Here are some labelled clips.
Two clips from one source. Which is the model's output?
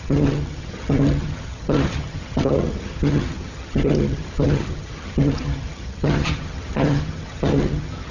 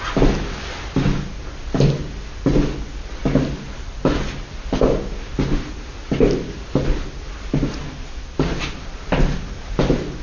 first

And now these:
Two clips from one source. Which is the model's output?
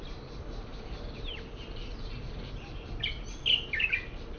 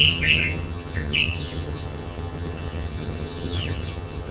second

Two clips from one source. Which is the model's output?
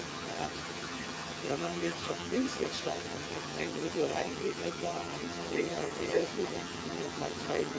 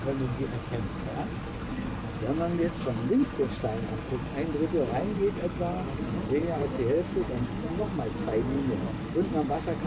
first